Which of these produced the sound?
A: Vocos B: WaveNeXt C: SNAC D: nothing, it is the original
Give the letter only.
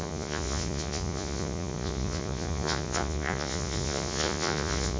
A